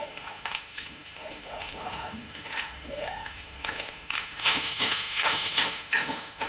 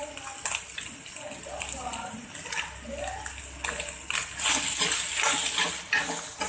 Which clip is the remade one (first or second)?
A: first